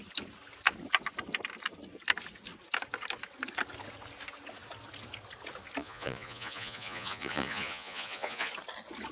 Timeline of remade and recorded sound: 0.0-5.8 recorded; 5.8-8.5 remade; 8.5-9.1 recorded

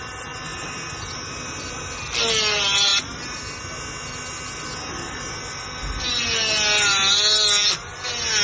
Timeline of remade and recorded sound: 0.0-8.4 recorded

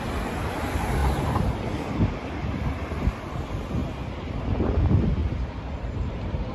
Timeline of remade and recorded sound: 0.0-5.2 recorded; 5.2-6.5 remade

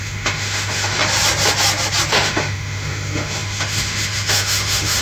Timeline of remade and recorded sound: 0.0-1.0 remade; 1.0-2.1 recorded; 2.1-5.0 remade

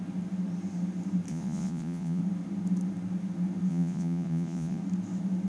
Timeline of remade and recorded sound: 0.0-1.3 recorded; 1.3-2.2 remade; 2.2-3.7 recorded; 3.7-4.8 remade; 4.8-5.5 recorded

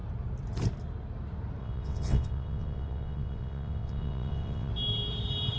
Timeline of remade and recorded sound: 0.0-1.6 recorded; 1.6-4.7 remade; 4.7-5.6 recorded